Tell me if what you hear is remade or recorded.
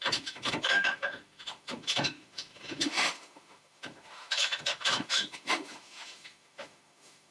remade